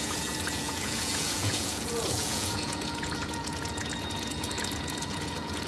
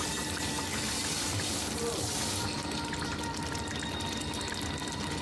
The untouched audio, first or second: second